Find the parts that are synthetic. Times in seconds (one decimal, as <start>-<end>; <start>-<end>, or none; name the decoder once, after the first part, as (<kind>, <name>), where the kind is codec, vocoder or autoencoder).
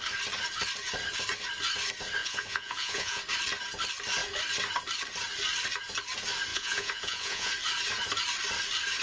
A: 2.2-3.2 (vocoder, Vocos); 6.5-7.5